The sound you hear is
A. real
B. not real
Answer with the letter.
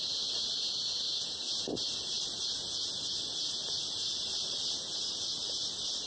A